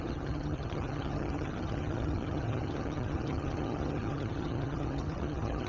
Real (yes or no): no